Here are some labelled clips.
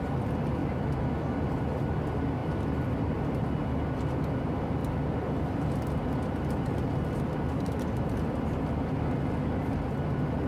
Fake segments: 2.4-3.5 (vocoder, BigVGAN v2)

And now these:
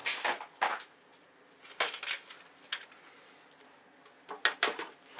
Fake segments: none

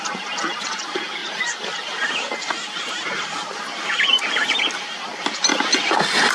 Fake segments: none

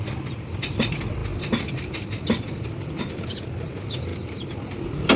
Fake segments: 0.0-1.2 (vocoder, BigVGAN v2); 3.0-4.1; 4.8-5.2

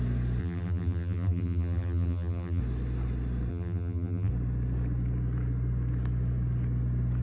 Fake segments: 0.4-2.6 (vocoder, BigVGAN v2); 3.5-4.3